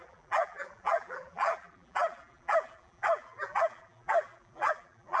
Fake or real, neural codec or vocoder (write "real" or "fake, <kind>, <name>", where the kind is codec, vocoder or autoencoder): fake, vocoder, BigVGAN v2